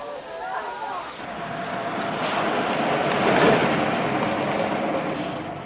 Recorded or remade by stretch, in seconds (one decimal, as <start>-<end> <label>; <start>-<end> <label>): 0.0-5.7 recorded